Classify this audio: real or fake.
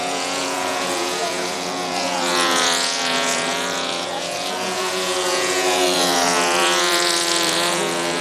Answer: fake